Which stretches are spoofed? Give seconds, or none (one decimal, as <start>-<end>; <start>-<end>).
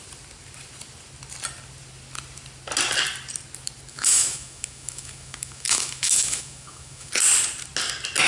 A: 3.9-7.1